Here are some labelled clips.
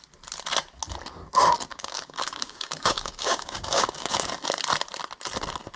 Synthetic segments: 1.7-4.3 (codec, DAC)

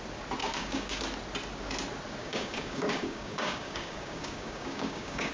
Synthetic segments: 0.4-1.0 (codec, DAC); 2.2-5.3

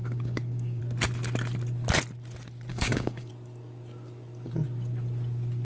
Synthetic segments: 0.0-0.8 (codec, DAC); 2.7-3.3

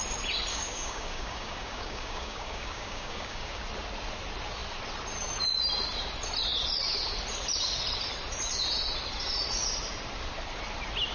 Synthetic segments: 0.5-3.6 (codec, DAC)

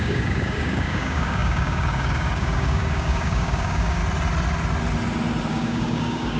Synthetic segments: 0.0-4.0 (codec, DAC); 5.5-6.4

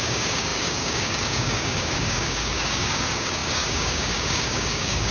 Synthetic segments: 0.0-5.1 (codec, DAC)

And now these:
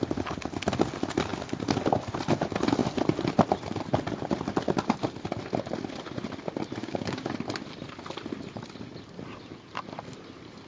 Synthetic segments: 6.8-7.3 (codec, DAC)

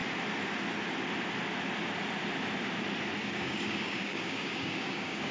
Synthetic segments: 3.2-5.3 (codec, DAC)